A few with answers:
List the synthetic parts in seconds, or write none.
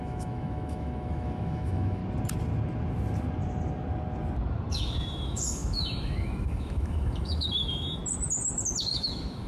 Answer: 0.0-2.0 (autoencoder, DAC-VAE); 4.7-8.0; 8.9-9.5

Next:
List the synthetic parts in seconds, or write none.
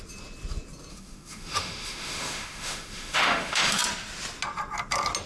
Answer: 0.9-3.8 (autoencoder, DAC-VAE)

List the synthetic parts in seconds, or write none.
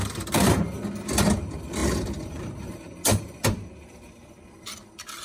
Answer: 0.0-0.6 (vocoder, BigVGAN v2); 1.8-4.4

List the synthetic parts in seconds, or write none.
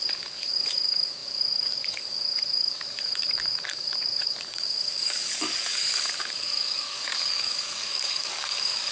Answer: 0.0-8.9 (codec, DAC)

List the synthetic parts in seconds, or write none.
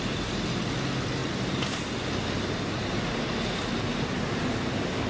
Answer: none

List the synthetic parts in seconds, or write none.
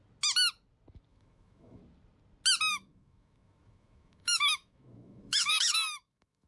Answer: 1.1-1.8 (autoencoder, DAC-VAE); 2.7-6.5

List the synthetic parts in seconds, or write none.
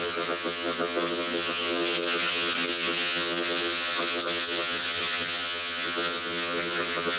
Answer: 0.0-7.2 (vocoder, HiFi-GAN)